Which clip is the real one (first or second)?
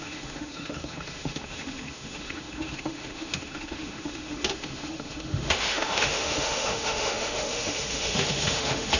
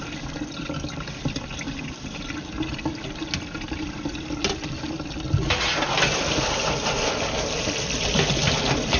second